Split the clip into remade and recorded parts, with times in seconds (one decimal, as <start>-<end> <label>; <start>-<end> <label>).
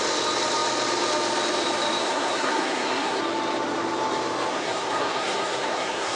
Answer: 0.0-2.0 recorded; 2.0-3.2 remade; 3.2-4.5 recorded; 4.5-6.2 remade